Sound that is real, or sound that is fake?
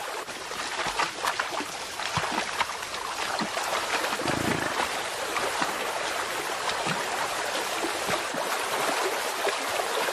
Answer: real